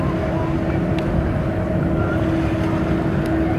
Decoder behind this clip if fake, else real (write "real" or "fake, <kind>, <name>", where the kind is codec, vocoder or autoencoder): real